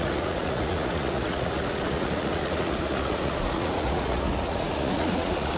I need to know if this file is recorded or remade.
remade